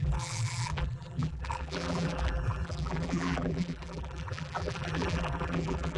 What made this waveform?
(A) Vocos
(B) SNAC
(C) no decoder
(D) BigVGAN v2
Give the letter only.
D